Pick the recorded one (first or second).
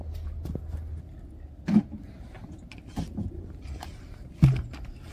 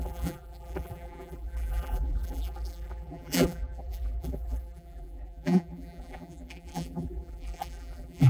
first